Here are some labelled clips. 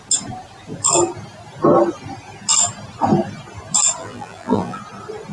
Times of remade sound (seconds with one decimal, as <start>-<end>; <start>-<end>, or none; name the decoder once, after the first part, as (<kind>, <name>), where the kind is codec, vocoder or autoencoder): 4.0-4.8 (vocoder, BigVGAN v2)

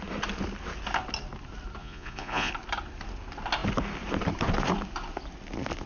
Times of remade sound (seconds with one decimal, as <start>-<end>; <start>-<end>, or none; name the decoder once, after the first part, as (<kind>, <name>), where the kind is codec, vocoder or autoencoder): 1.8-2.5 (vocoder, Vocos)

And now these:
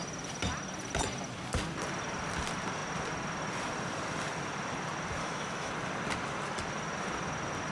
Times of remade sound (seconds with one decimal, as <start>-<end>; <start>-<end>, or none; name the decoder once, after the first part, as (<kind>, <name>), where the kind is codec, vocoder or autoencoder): 5.2-5.7 (autoencoder, DAC-VAE)

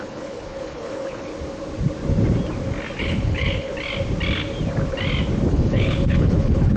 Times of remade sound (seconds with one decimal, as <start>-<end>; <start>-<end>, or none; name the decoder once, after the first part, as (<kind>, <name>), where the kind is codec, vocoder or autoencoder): 0.0-1.3 (codec, HILCodec); 3.0-3.7; 5.5-6.8